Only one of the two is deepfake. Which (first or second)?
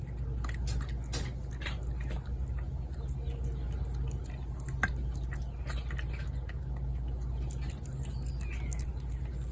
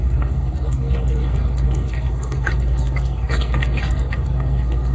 second